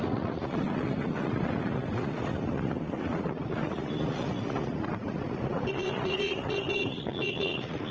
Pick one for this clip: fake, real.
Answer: fake